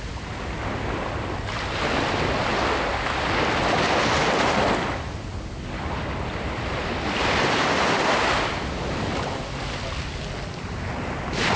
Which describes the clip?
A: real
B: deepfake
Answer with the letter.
A